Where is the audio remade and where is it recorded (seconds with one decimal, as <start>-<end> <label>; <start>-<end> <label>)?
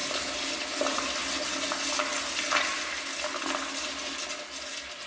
0.0-5.1 recorded